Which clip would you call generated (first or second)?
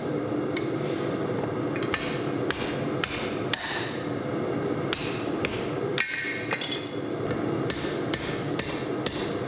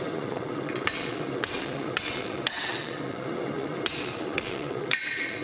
second